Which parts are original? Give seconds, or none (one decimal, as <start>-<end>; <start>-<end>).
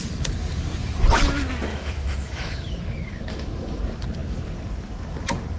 0.0-1.7; 2.8-3.3; 3.8-5.6